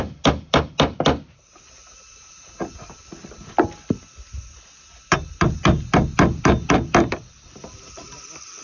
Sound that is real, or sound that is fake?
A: real